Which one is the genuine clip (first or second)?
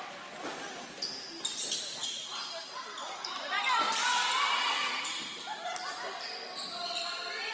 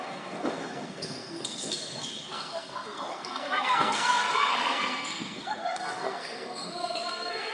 first